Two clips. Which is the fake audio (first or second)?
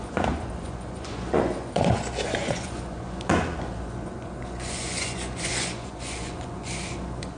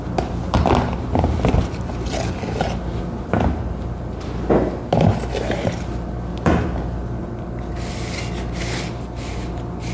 first